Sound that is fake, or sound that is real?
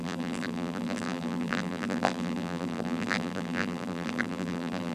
fake